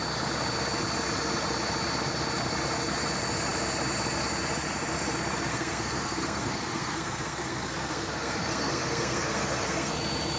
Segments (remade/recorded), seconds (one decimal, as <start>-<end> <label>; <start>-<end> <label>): 0.0-5.5 recorded; 5.5-9.9 remade; 9.9-10.4 recorded